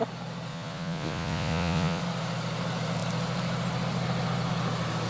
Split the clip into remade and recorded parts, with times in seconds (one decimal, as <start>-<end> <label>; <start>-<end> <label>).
0.0-0.5 recorded; 0.5-2.0 remade; 2.0-5.1 recorded